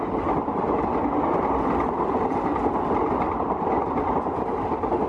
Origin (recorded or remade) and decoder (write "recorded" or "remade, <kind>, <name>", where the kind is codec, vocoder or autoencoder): recorded